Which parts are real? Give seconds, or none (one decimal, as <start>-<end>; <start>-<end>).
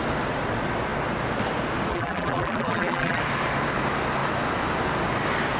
0.0-1.9; 3.2-5.6